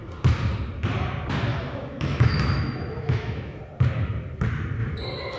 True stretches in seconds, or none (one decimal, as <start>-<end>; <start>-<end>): 0.0-1.5; 3.6-5.4